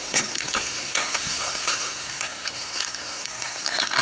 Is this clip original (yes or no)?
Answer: no